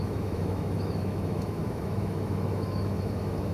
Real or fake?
fake